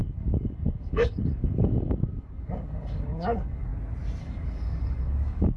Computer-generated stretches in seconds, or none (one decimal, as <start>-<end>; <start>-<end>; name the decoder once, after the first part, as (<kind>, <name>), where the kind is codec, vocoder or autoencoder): 0.0-3.7 (codec, DAC); 4.2-5.6